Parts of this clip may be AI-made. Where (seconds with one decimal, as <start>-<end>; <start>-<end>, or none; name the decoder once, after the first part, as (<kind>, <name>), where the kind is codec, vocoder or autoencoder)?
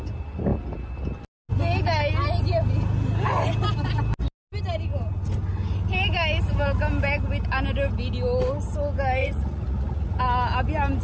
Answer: 9.2-10.2 (vocoder, Vocos)